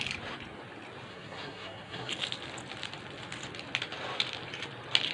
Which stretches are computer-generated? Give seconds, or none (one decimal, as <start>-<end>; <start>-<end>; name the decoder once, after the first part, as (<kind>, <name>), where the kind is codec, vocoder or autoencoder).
1.1-2.1 (codec, SNAC)

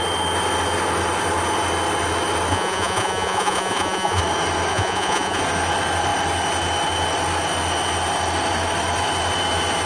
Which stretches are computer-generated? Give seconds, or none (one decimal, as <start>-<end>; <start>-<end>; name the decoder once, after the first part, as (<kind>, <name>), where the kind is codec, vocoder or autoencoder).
2.5-4.2 (vocoder, Vocos); 4.7-5.4

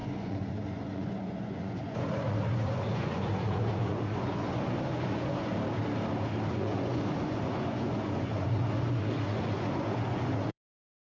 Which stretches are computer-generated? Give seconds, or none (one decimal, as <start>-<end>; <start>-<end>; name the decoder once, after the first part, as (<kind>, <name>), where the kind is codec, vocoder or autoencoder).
0.0-5.5 (vocoder, Vocos); 6.5-11.1

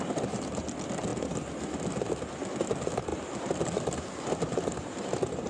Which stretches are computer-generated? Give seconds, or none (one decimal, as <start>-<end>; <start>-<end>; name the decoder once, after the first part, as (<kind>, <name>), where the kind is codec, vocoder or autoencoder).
none

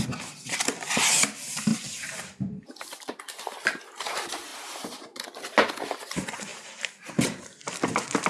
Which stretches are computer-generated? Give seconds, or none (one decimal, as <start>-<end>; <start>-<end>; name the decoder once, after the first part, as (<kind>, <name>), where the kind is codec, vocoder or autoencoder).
1.7-3.8 (vocoder, BigVGAN v2); 6.5-7.8

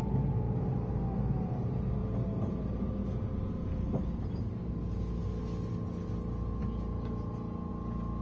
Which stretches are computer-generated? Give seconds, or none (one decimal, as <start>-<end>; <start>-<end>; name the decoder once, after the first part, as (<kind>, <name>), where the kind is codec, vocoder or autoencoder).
none

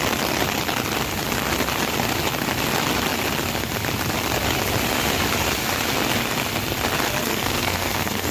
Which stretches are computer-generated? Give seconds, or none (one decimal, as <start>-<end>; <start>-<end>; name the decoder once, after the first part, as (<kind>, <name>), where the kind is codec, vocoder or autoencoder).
7.2-8.3 (codec, SNAC)

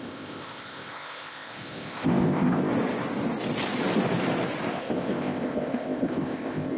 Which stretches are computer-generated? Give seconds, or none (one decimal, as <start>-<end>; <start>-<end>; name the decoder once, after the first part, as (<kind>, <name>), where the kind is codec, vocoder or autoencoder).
0.0-2.7 (codec, ZipCodec); 4.7-6.8